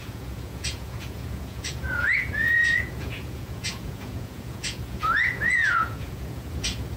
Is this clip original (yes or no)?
no